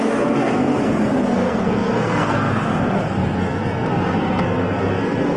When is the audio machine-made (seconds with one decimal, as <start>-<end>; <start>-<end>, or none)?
0.0-5.4